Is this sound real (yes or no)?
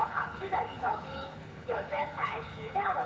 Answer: no